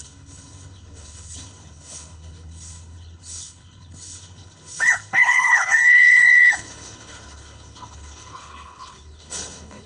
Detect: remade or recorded remade